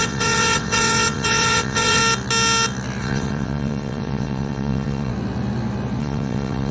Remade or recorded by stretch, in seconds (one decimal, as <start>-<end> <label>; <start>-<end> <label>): 0.0-2.0 remade; 2.0-3.0 recorded; 3.0-5.1 remade; 5.1-6.0 recorded; 6.0-6.7 remade